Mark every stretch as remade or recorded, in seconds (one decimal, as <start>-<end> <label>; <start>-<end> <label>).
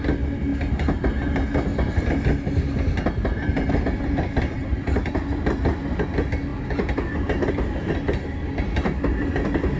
0.0-4.6 recorded; 4.6-5.8 remade; 5.8-9.8 recorded